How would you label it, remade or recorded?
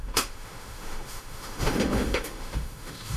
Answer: remade